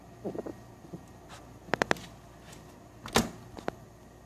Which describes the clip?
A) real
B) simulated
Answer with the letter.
A